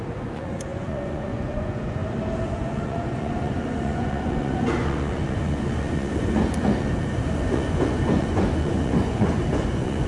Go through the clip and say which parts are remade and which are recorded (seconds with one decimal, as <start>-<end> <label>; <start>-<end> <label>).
0.0-2.0 remade; 2.0-2.5 recorded; 2.5-10.1 remade